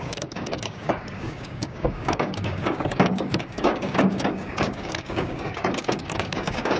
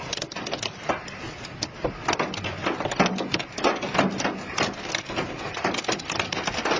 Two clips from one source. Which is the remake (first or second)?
first